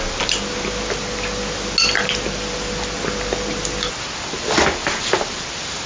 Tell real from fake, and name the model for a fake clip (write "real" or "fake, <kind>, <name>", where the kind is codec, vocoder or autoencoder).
real